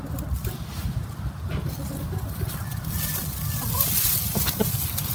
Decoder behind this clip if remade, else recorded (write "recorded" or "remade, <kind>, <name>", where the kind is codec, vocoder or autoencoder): recorded